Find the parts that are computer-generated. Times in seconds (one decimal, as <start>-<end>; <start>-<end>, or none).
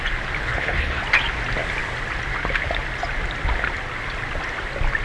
0.4-1.0